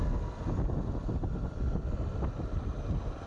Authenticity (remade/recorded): recorded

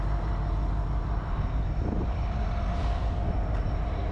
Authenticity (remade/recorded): recorded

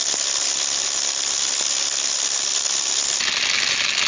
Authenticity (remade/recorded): recorded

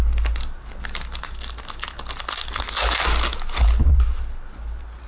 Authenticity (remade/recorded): recorded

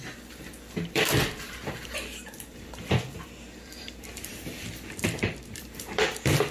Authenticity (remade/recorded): remade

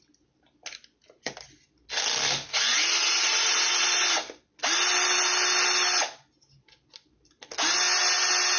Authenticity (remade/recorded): recorded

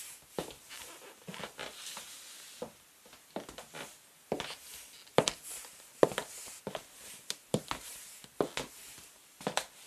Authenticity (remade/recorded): recorded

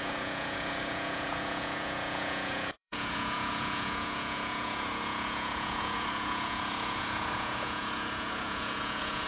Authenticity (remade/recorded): remade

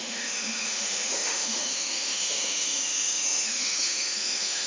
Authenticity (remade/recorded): remade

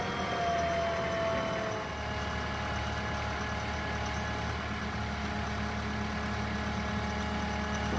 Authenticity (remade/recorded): recorded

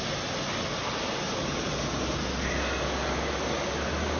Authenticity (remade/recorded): recorded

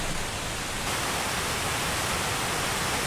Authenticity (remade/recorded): recorded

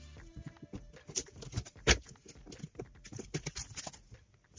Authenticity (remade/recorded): recorded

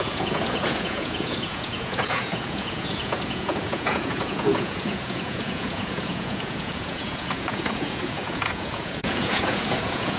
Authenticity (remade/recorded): remade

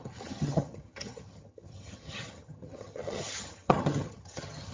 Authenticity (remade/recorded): remade